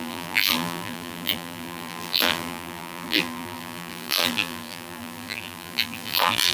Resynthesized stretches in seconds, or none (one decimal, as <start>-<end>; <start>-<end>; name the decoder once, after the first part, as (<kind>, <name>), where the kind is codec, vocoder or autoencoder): 0.0-6.5 (vocoder, BigVGAN v2)